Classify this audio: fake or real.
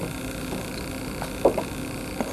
real